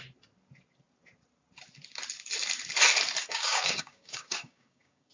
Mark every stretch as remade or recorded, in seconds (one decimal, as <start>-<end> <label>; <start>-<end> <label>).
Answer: 0.0-3.2 recorded; 3.2-5.1 remade